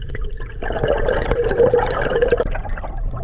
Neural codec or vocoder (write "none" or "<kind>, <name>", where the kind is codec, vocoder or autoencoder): vocoder, BigVGAN v2